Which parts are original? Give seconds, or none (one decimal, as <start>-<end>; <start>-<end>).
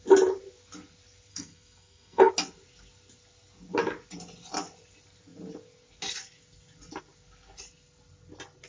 0.0-1.3; 2.3-8.7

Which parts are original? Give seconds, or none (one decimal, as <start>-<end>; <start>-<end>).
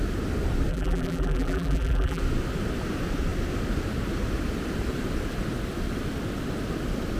0.0-0.7; 2.2-7.2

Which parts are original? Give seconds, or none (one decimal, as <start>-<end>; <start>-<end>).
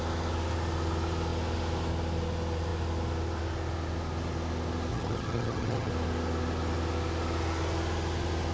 0.0-4.9; 5.9-8.5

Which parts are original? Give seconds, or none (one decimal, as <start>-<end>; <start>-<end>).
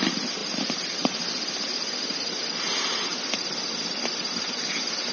0.0-5.1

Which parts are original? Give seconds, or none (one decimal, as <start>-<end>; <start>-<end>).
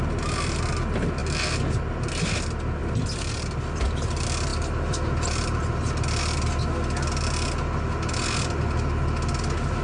0.0-9.8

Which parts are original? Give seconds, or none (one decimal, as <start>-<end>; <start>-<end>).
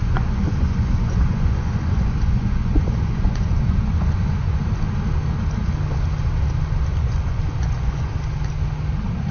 4.6-6.9; 8.1-9.3